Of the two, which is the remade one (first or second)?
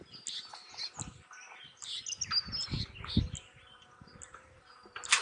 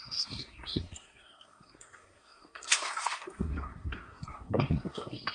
second